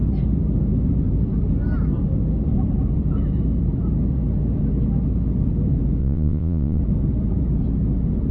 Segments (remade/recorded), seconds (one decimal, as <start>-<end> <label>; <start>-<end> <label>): 0.0-6.0 recorded; 6.0-6.8 remade; 6.8-8.3 recorded